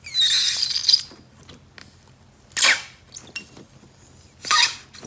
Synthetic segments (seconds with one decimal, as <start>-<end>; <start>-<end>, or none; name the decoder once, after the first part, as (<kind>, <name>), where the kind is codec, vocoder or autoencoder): none

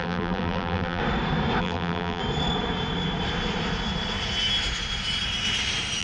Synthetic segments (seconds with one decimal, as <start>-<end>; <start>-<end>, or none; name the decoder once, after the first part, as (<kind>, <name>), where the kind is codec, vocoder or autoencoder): 0.0-1.0 (vocoder, BigVGAN v2); 1.6-2.2

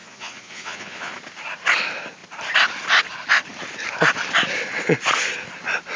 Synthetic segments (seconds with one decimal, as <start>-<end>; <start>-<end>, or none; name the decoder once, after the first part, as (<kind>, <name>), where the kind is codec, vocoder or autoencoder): 0.0-1.1 (vocoder, Vocos)

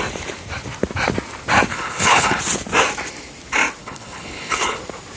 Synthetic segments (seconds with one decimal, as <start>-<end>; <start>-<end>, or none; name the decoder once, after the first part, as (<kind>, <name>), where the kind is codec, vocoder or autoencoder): 1.7-2.4 (codec, HILCodec); 3.8-4.8

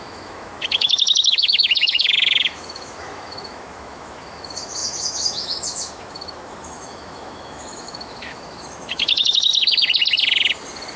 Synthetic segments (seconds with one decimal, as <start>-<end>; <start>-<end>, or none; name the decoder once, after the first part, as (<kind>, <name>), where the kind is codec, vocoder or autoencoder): 0.0-9.5 (autoencoder, DAC-VAE)

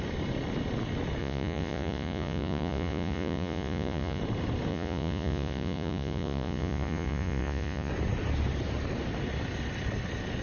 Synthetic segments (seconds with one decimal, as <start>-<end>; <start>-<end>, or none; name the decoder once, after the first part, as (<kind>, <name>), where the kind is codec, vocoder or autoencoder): 1.2-4.2 (vocoder, Vocos); 4.7-7.9